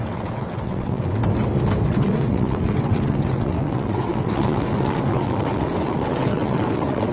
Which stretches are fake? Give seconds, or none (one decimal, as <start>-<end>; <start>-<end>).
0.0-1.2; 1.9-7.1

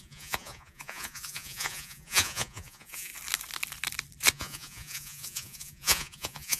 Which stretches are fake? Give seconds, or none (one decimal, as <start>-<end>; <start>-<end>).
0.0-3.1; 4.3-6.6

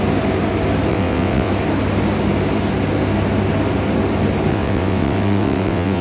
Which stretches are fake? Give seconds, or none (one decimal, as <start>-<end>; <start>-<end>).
0.9-1.5; 4.5-6.0

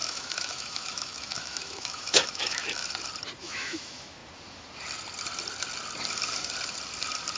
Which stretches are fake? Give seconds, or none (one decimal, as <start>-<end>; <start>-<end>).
0.0-2.8; 3.4-4.2

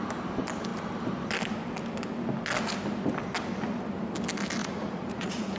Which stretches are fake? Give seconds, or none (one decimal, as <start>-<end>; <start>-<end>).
4.6-5.6

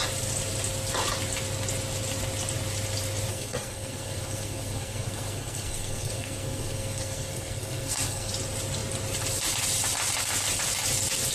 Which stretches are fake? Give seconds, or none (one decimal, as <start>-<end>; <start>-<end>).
3.3-8.3